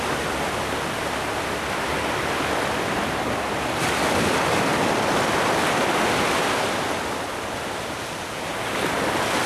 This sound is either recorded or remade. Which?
recorded